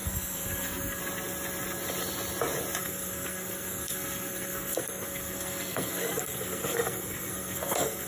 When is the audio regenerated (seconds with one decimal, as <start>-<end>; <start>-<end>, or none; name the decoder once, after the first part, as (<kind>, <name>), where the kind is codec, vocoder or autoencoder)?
0.0-1.0 (codec, SNAC); 2.8-8.1